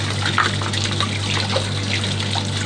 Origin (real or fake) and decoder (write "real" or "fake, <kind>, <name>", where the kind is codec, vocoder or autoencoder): real